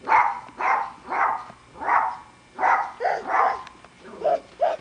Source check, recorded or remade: recorded